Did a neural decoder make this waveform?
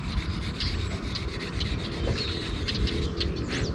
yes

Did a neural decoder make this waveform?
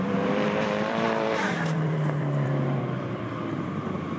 yes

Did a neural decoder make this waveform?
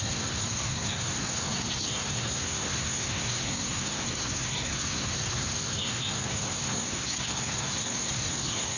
yes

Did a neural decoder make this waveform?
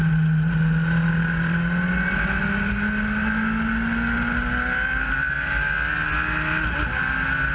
no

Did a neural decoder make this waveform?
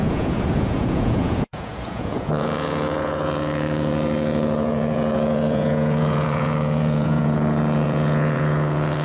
yes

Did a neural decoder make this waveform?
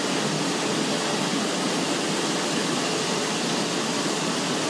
no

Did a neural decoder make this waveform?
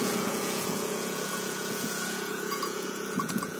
yes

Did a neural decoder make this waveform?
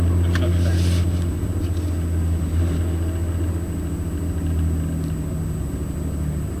no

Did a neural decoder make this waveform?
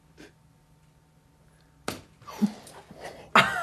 no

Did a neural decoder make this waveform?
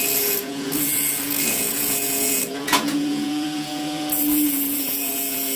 yes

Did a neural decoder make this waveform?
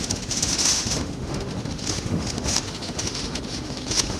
yes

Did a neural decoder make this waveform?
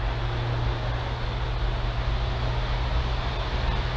no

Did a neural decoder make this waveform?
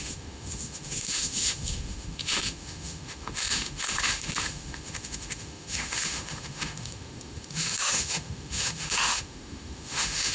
yes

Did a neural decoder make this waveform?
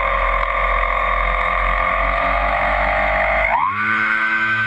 yes